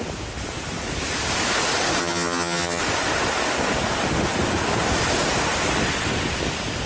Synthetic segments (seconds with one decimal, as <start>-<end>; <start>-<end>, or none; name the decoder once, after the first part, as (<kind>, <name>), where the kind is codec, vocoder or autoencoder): 2.0-2.8 (vocoder, HiFi-GAN)